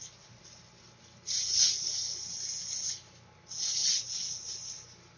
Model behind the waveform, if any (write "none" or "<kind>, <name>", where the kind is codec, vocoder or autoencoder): none